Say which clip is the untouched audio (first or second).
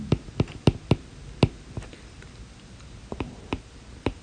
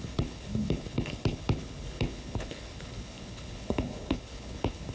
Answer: first